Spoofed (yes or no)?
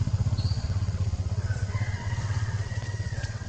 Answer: yes